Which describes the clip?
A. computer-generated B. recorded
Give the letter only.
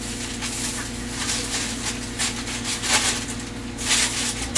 B